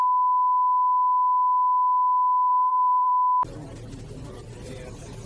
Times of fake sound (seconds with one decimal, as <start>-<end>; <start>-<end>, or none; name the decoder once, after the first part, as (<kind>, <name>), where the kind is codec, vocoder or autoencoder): 2.5-3.1 (vocoder, BigVGAN v2)